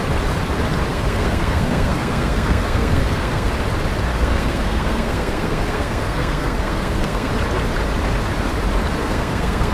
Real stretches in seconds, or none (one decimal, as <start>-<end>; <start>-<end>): 0.0-0.9; 3.5-4.1; 7.3-9.0